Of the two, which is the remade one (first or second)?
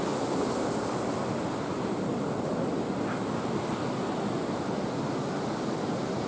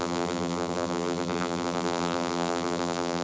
second